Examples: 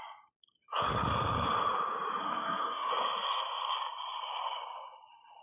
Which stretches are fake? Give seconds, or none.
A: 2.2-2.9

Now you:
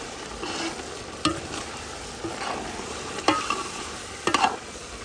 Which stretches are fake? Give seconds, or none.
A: none